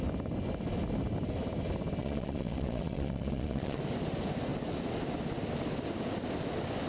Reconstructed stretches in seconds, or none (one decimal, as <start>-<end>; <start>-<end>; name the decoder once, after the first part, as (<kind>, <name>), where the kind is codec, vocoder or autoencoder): 2.0-3.8 (vocoder, Vocos)